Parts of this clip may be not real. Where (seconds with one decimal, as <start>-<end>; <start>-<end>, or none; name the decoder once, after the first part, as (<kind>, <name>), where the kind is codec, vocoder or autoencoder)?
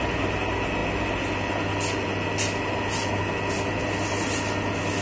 none